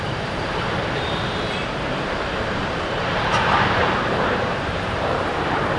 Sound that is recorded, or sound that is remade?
remade